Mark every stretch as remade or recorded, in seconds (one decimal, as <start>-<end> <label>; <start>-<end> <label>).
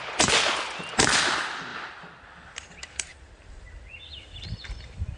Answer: 0.0-1.7 recorded; 1.7-4.0 remade; 4.0-5.2 recorded